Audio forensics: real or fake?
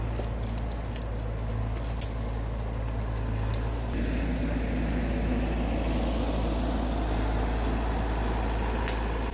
real